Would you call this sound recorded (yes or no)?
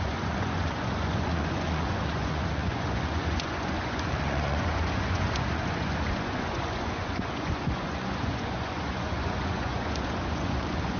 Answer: no